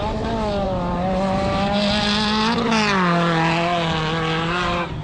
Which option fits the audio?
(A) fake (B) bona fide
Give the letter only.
B